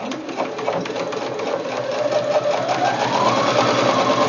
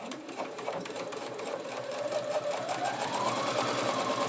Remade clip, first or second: second